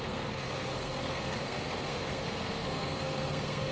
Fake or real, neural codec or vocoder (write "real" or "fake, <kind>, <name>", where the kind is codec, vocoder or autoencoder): fake, codec, SNAC